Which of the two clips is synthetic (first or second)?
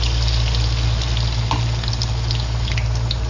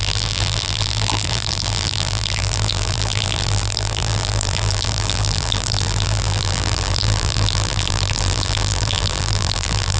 second